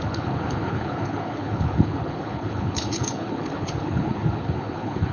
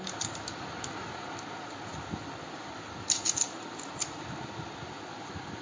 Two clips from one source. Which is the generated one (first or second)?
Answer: first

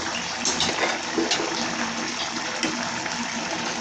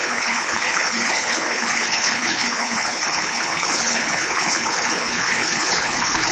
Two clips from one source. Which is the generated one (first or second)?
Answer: second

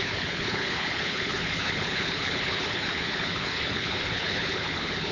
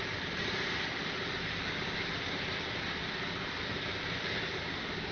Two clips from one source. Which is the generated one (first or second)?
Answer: first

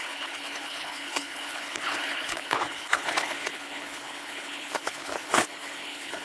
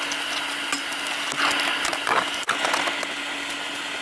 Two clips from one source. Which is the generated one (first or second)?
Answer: first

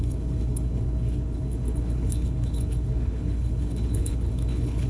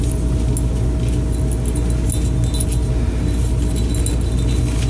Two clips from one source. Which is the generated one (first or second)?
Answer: first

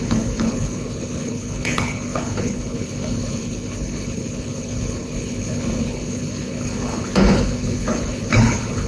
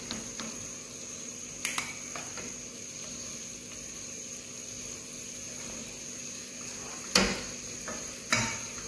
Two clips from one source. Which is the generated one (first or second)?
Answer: first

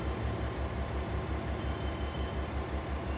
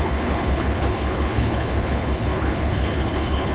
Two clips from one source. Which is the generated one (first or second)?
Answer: second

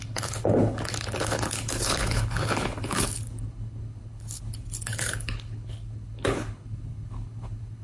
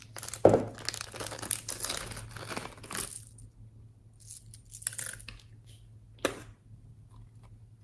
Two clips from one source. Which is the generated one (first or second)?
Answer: first